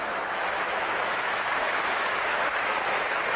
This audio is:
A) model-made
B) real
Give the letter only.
A